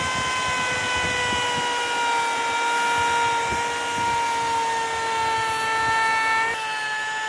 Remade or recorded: recorded